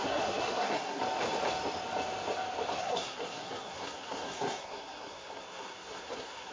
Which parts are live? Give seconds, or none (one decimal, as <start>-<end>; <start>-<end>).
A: 1.0-2.8